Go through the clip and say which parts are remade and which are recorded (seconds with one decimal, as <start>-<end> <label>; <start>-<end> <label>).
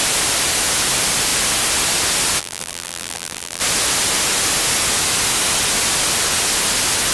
0.0-2.4 recorded; 2.4-3.6 remade; 3.6-7.1 recorded